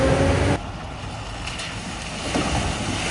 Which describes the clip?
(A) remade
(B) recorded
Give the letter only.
B